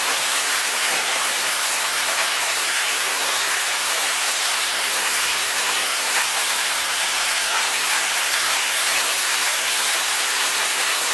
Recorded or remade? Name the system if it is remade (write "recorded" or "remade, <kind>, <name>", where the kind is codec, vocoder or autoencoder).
remade, codec, SNAC